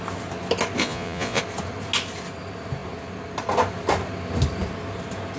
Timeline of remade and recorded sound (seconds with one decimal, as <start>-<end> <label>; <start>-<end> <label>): 0.0-0.8 recorded; 0.8-1.4 remade; 1.4-5.4 recorded